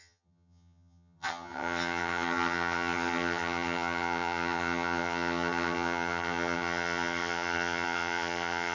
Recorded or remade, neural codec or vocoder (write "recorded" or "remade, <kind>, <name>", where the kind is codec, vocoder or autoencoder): remade, vocoder, HiFi-GAN